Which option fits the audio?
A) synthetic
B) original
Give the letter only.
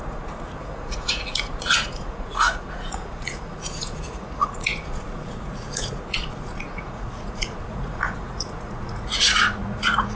A